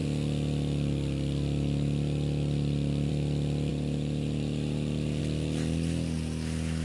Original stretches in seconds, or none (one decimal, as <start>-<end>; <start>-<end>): 0.0-3.7; 5.2-6.8